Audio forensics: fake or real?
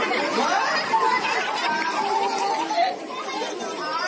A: real